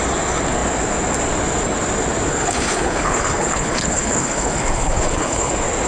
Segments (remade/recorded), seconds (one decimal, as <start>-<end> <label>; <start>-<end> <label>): 0.0-2.3 recorded; 2.3-5.5 remade; 5.5-5.9 recorded